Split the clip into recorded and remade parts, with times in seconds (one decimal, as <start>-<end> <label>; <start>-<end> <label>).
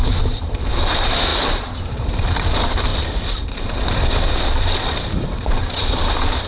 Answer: 0.0-6.5 recorded